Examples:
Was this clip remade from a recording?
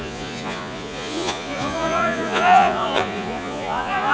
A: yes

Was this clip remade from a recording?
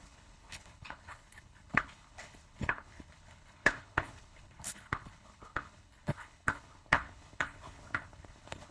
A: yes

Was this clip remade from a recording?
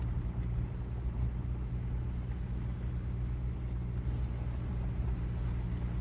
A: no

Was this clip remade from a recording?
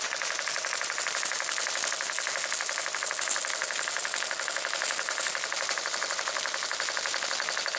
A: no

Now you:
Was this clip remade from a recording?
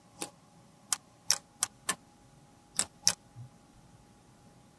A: no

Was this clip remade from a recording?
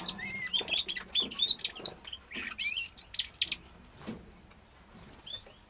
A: no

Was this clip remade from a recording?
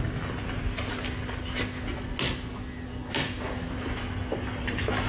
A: no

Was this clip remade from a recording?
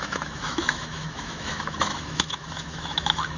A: yes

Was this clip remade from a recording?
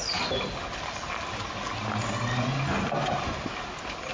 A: no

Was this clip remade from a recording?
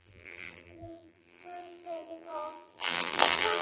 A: yes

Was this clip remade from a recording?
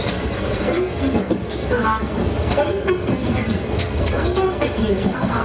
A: yes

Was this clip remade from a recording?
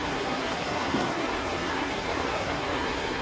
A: yes